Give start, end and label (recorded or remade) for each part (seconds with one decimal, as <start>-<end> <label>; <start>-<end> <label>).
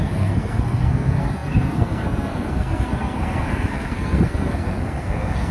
0.0-5.5 remade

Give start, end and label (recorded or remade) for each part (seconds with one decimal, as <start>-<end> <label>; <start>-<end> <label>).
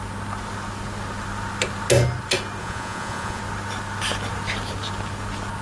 0.0-2.6 recorded; 2.6-3.4 remade; 3.4-5.6 recorded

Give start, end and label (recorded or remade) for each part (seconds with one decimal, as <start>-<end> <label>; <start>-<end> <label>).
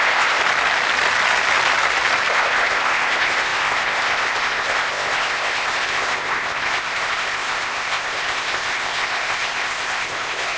0.0-0.4 remade; 0.4-2.3 recorded; 2.3-10.6 remade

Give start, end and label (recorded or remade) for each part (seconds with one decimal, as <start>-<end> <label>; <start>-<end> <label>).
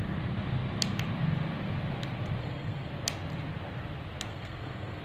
0.0-2.4 recorded; 2.4-2.9 remade; 2.9-4.3 recorded; 4.3-5.0 remade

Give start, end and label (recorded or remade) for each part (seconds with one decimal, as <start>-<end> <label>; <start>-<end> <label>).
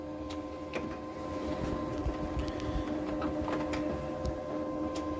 0.0-5.2 recorded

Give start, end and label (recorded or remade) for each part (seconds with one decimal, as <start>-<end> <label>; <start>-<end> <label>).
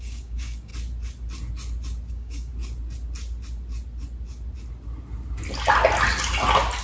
0.0-0.7 remade; 0.7-2.1 recorded; 2.1-2.5 remade; 2.5-6.8 recorded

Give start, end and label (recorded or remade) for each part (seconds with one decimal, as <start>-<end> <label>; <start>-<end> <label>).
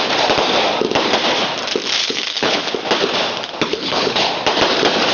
0.0-2.0 recorded; 2.0-2.6 remade; 2.6-3.7 recorded; 3.7-4.3 remade; 4.3-5.1 recorded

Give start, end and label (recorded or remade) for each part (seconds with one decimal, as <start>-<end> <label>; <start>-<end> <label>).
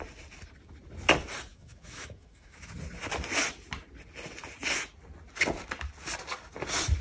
0.0-1.5 recorded; 1.5-2.7 remade; 2.7-7.0 recorded